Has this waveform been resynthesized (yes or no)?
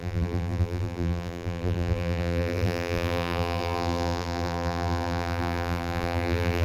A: yes